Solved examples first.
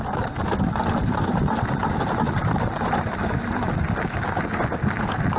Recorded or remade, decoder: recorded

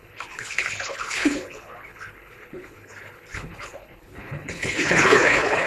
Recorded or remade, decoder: remade, codec, HILCodec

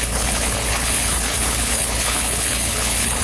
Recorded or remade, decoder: remade, codec, HILCodec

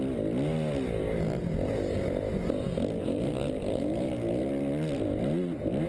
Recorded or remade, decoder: recorded